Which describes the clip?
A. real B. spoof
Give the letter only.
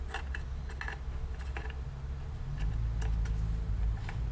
A